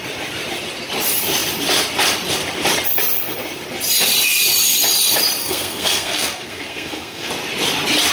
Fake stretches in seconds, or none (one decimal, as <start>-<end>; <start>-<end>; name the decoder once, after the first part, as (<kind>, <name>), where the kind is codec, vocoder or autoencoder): 5.4-7.3 (codec, SNAC)